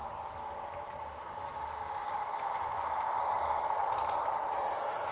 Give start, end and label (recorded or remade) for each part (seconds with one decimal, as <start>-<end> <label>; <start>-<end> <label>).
0.0-2.7 recorded; 2.7-3.4 remade; 3.4-3.8 recorded; 3.8-5.1 remade